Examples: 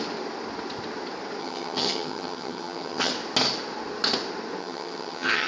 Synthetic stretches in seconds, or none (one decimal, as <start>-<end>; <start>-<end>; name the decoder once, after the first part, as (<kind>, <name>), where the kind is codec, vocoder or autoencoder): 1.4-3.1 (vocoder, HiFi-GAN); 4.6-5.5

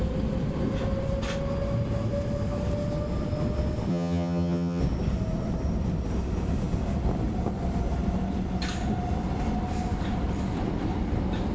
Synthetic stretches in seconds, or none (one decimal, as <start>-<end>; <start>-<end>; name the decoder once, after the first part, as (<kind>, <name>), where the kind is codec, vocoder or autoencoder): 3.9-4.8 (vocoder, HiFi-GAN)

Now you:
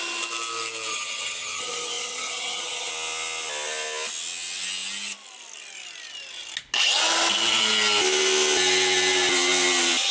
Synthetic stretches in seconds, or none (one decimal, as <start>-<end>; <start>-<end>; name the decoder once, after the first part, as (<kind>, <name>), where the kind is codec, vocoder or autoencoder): 0.9-2.9 (vocoder, HiFi-GAN)

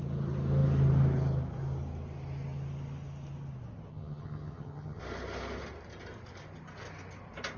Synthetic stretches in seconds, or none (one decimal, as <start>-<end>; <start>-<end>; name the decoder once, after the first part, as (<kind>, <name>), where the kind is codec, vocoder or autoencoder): 3.9-5.0 (vocoder, HiFi-GAN)

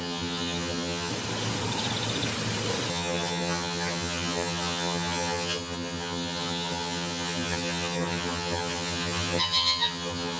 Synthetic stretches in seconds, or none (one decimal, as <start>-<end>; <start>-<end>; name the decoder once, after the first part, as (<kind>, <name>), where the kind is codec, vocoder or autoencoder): 0.0-1.1 (vocoder, HiFi-GAN); 2.9-10.4